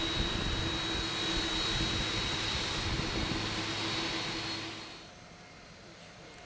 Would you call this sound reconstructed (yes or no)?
no